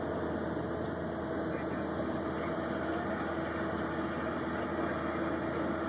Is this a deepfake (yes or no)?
no